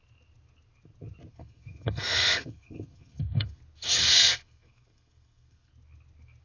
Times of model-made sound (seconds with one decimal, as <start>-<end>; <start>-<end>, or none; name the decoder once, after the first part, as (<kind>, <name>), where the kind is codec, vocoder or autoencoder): 1.3-3.6 (codec, SNAC); 4.0-5.7